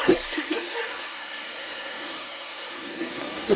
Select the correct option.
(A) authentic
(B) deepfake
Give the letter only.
B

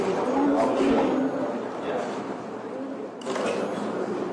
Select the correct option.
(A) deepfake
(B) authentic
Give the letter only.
B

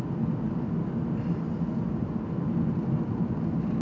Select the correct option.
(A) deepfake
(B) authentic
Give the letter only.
B